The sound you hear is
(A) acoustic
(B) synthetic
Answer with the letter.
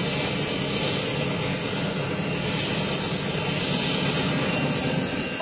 A